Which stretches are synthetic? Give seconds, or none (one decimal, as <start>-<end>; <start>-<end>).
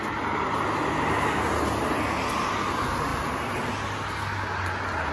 none